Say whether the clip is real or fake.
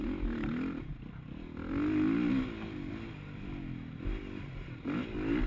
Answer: real